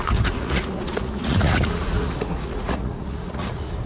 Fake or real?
fake